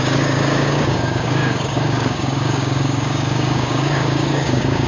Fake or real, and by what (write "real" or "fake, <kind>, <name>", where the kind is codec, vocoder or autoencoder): fake, codec, DAC